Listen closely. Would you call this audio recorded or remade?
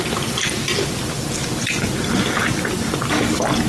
remade